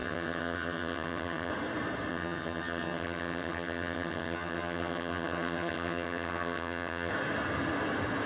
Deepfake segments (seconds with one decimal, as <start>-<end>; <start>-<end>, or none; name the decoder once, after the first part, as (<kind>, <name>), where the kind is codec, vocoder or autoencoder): 0.0-1.5 (vocoder, HiFi-GAN); 2.1-7.1